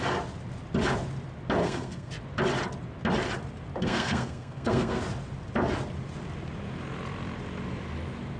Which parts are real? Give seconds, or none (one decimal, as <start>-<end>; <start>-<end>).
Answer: 0.0-1.6; 2.1-3.8; 5.0-8.4